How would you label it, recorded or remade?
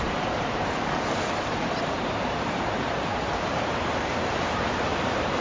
remade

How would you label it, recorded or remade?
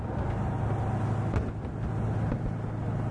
recorded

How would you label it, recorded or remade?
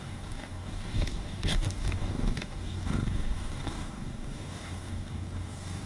remade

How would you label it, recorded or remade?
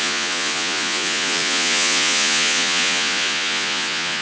remade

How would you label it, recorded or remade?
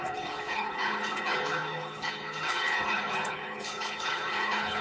remade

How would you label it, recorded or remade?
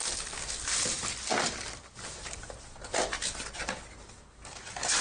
recorded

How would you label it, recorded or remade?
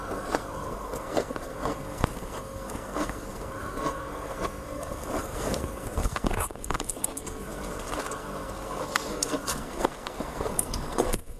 remade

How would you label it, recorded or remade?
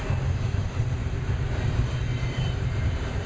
remade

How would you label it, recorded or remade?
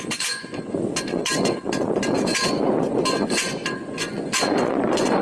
remade